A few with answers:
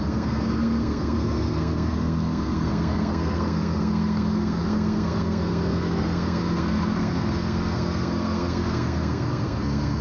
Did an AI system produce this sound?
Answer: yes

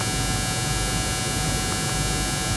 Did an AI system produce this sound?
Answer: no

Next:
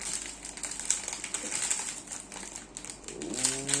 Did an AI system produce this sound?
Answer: no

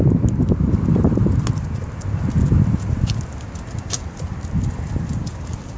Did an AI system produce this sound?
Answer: no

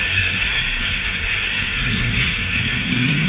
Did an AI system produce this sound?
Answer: yes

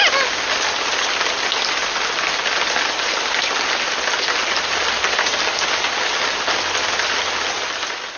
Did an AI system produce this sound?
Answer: no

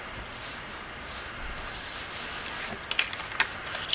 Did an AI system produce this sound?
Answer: no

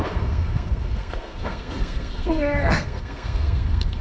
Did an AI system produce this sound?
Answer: yes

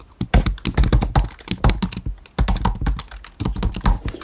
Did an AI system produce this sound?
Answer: no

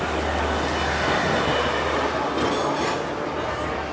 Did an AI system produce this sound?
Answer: no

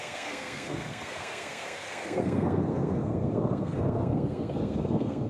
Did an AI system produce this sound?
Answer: yes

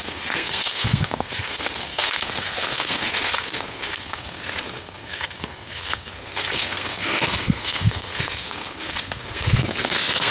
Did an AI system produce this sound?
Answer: yes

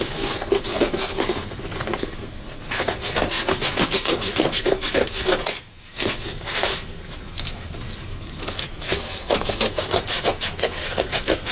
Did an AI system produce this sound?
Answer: yes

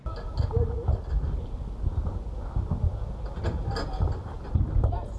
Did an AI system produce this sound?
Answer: no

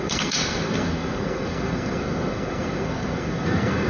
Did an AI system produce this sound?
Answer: yes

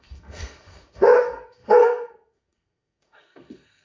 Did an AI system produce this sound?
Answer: yes